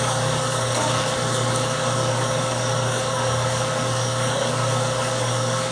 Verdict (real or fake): fake